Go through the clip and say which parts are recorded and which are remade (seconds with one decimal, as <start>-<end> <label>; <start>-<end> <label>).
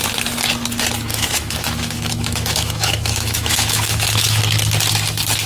0.0-1.1 recorded; 1.1-4.4 remade; 4.4-5.5 recorded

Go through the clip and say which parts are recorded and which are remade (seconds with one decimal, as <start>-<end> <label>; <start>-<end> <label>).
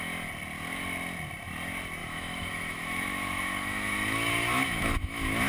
0.0-2.0 recorded; 2.0-5.5 remade